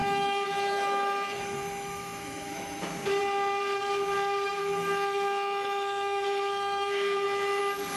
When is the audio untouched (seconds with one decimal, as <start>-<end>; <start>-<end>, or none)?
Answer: 2.8-4.6; 7.6-8.0